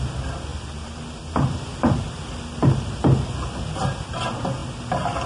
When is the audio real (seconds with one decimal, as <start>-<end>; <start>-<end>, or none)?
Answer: 0.0-5.3